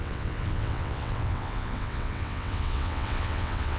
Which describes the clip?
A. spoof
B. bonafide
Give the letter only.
A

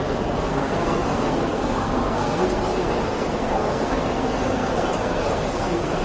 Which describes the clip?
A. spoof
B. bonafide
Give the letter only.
A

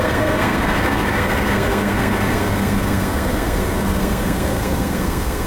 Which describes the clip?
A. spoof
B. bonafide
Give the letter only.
A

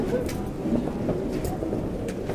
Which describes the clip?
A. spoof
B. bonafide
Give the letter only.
B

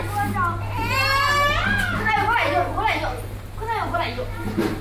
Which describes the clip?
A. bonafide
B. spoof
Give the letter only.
A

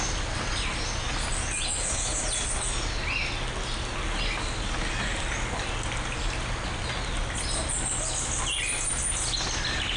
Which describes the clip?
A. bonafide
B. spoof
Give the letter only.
A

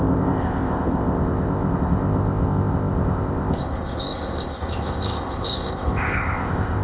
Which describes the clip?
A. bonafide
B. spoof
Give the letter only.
B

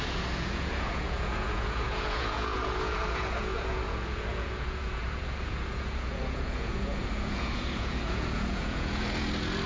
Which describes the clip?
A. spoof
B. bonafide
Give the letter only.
A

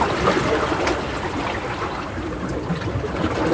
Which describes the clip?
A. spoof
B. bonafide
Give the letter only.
A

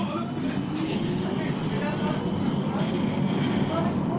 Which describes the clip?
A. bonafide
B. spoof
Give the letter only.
A